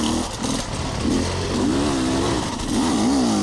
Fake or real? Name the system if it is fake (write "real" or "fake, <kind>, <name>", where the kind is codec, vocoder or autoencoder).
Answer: real